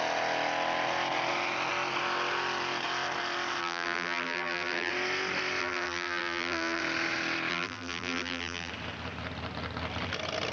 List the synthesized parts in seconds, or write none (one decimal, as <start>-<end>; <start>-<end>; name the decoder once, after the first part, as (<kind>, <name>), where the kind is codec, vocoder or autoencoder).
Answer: 3.6-4.9 (vocoder, BigVGAN v2); 5.6-6.8; 7.5-8.7